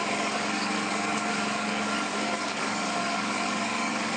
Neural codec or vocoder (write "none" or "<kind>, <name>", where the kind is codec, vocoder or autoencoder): codec, DAC